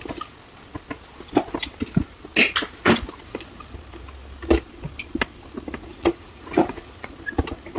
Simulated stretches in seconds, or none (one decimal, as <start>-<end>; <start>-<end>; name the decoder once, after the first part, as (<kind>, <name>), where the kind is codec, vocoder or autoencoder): 5.9-7.1 (vocoder, Vocos)